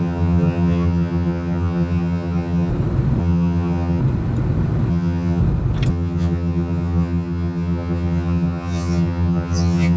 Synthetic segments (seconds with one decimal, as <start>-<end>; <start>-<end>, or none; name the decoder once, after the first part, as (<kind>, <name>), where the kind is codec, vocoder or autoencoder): 0.0-2.7 (vocoder, HiFi-GAN); 3.2-4.0; 4.9-5.4; 5.9-10.0